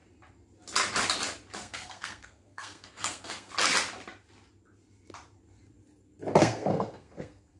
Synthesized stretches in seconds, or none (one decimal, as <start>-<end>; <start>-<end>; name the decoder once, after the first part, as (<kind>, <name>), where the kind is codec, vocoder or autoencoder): 1.6-3.5 (codec, SNAC); 6.4-7.6